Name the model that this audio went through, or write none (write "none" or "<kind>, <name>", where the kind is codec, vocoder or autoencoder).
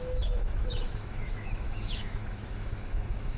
autoencoder, DAC-VAE